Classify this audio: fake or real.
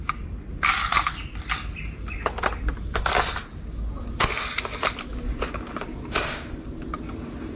real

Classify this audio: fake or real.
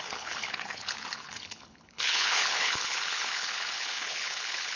fake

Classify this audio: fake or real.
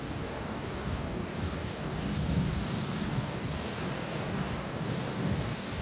fake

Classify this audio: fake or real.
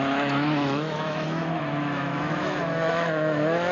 fake